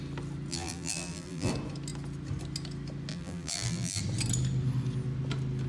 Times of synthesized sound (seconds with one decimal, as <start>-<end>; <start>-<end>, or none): 0.5-1.5; 3.1-4.0